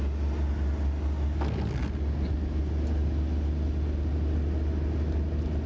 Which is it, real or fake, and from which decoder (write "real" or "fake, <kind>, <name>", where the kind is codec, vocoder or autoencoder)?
real